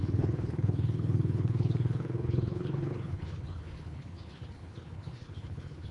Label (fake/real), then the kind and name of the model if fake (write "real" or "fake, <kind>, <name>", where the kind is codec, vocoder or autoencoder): fake, codec, HILCodec